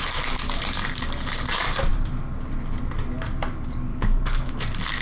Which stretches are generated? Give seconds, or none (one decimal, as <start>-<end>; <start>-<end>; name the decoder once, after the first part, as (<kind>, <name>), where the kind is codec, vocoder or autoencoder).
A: 3.9-4.5 (codec, DAC)